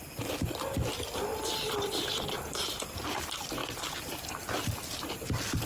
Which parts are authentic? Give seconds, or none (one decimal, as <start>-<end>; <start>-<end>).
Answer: 0.0-1.3; 3.2-3.6; 4.3-5.7